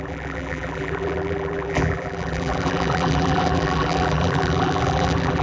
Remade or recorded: remade